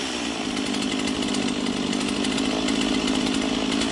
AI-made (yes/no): no